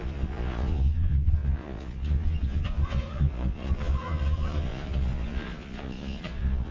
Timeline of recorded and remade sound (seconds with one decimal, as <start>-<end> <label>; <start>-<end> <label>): 0.0-6.7 remade